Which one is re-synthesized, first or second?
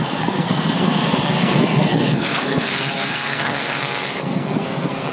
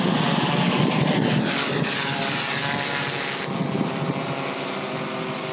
first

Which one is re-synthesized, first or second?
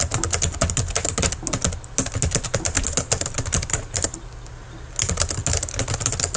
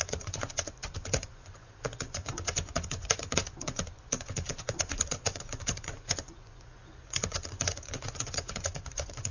second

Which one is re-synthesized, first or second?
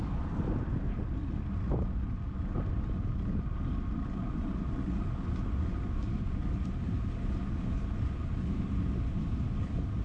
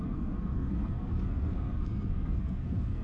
second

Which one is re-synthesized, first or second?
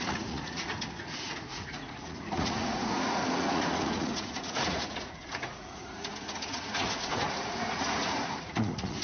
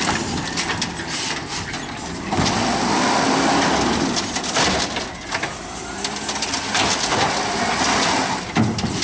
first